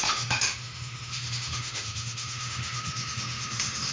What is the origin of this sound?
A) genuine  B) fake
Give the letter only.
B